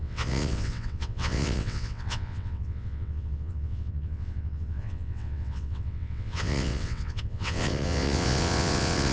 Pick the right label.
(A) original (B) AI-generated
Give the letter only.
B